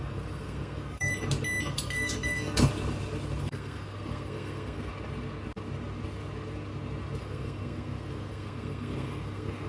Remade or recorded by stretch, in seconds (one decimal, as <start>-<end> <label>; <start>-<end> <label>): 0.0-1.1 remade; 1.1-1.7 recorded; 1.7-2.7 remade; 2.7-3.4 recorded; 3.4-4.9 remade; 4.9-7.2 recorded; 7.2-9.7 remade

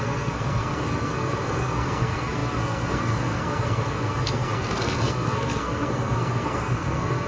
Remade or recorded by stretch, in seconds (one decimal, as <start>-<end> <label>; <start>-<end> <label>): 0.0-7.3 remade